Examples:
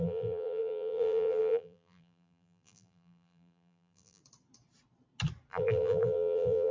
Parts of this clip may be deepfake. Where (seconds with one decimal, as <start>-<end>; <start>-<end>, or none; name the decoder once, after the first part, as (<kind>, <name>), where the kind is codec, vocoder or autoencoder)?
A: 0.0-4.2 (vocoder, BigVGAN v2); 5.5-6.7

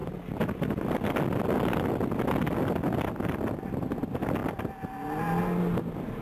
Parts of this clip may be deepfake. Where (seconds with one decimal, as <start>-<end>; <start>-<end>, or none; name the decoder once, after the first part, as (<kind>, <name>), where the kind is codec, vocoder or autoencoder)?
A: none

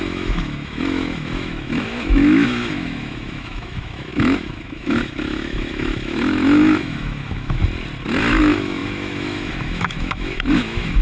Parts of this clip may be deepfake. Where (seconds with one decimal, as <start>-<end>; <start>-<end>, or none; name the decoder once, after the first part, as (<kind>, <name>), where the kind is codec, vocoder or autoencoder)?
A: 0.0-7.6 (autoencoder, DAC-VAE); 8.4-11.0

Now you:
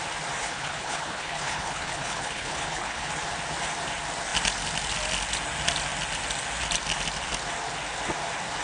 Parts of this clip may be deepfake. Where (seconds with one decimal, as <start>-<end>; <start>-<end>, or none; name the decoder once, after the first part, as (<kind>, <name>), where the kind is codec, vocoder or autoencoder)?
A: 0.4-3.1 (codec, HILCodec)